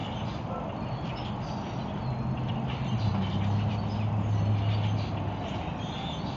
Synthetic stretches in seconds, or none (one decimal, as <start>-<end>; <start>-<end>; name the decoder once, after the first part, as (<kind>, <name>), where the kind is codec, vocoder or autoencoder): none